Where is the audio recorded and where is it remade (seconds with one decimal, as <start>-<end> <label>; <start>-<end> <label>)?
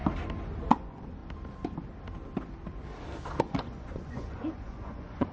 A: 0.0-0.7 recorded; 0.7-1.2 remade; 1.2-3.4 recorded; 3.4-5.3 remade